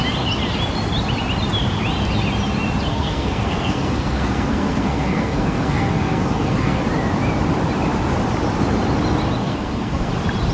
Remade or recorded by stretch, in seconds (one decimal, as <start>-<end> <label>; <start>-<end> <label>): 0.0-2.9 recorded; 2.9-6.8 remade; 6.8-9.4 recorded; 9.4-10.1 remade; 10.1-10.5 recorded